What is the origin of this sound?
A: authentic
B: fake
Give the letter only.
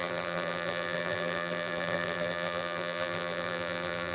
B